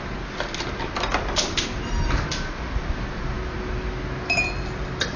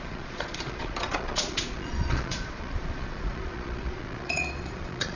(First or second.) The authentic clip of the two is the first